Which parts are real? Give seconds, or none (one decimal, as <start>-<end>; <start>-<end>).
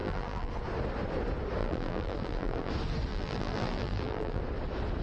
0.5-1.6; 2.7-3.1; 4.4-5.0